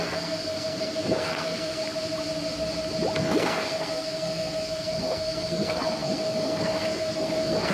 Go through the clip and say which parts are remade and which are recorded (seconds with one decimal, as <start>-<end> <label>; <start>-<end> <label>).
0.0-1.8 remade; 1.8-3.2 recorded; 3.2-7.7 remade

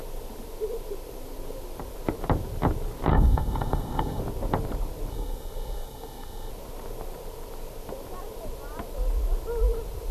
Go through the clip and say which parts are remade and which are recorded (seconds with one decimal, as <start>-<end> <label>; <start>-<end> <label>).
0.0-3.1 recorded; 3.1-4.2 remade; 4.2-5.1 recorded; 5.1-6.5 remade; 6.5-10.1 recorded

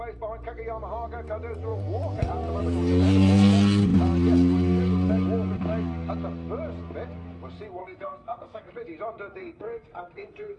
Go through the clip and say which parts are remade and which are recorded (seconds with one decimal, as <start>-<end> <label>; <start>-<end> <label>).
0.0-7.8 recorded; 7.8-8.7 remade; 8.7-9.4 recorded; 9.4-10.6 remade

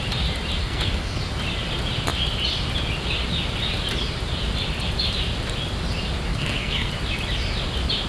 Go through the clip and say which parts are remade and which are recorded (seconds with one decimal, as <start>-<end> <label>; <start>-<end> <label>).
0.0-0.6 recorded; 0.6-1.2 remade; 1.2-6.3 recorded; 6.3-6.9 remade; 6.9-8.1 recorded

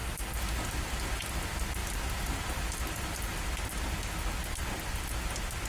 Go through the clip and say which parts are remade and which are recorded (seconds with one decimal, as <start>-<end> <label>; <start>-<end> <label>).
0.0-5.7 recorded

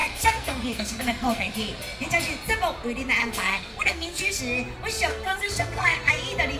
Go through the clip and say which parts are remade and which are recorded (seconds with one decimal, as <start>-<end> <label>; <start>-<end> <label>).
0.0-1.5 remade; 1.5-3.2 recorded; 3.2-4.4 remade; 4.4-5.1 recorded; 5.1-6.1 remade; 6.1-6.6 recorded

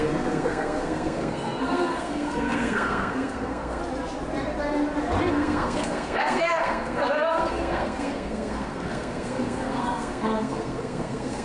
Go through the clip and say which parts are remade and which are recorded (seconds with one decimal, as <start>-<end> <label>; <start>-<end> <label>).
0.0-3.8 remade; 3.8-5.3 recorded; 5.3-11.4 remade

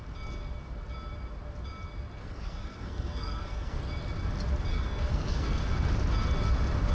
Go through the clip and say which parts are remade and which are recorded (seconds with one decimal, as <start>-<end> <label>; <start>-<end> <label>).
0.0-2.2 recorded; 2.2-3.8 remade; 3.8-4.7 recorded; 4.7-5.6 remade; 5.6-6.9 recorded